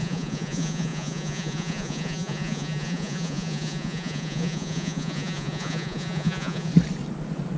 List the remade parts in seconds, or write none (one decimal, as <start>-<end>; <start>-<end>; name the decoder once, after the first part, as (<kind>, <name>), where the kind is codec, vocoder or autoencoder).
0.0-6.7 (vocoder, Vocos)